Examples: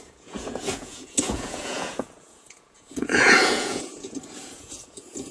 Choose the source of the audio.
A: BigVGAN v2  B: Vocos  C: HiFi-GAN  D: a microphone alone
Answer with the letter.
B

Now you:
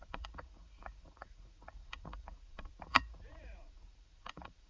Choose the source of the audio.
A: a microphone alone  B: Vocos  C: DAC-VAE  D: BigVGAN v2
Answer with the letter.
B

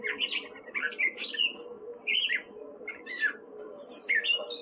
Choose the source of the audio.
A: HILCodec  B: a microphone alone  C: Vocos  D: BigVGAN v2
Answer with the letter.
B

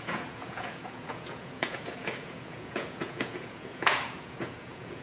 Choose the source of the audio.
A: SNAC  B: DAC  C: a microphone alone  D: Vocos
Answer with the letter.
D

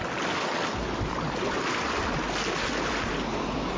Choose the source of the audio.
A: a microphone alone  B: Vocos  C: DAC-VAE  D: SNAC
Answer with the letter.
A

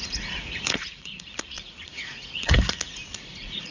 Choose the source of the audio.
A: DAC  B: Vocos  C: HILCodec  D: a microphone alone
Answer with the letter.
B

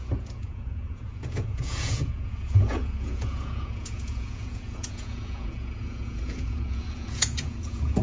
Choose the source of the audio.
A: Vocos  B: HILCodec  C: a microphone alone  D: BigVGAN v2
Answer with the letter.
A